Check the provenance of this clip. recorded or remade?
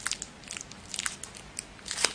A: recorded